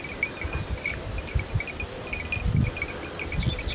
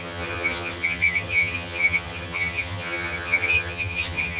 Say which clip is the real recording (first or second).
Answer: first